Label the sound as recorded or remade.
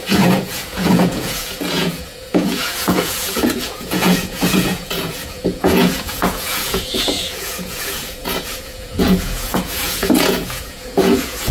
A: remade